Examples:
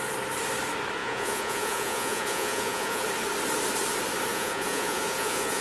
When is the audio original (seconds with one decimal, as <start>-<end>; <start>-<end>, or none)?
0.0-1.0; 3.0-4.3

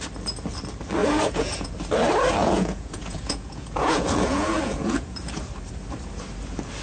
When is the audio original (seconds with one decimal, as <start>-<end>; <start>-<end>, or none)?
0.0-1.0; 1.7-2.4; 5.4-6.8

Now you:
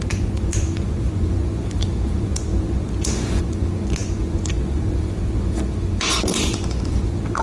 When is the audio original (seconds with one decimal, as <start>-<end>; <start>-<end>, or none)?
none